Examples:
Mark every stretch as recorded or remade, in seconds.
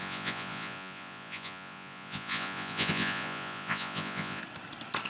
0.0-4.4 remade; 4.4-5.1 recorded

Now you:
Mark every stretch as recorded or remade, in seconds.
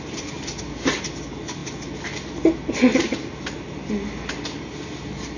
0.0-5.4 recorded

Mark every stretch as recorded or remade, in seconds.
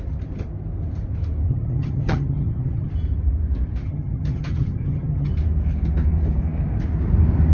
0.0-1.5 recorded; 1.5-2.9 remade; 2.9-3.8 recorded; 3.8-5.3 remade; 5.3-7.5 recorded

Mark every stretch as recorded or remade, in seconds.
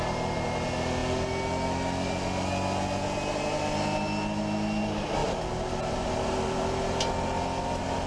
0.0-8.1 recorded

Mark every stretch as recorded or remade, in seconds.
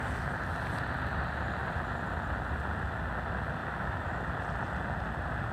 0.0-3.6 recorded; 3.6-4.2 remade; 4.2-5.5 recorded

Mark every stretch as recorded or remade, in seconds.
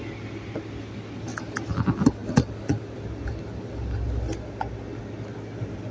0.0-5.9 recorded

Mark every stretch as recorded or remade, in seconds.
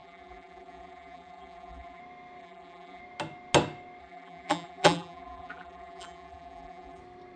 0.0-2.0 remade; 2.0-2.4 recorded; 2.4-3.0 remade; 3.0-4.0 recorded; 4.0-7.0 remade; 7.0-7.4 recorded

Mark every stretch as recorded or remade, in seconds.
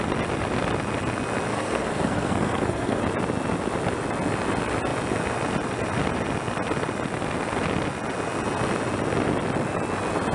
0.0-1.5 recorded; 1.5-3.0 remade; 3.0-10.3 recorded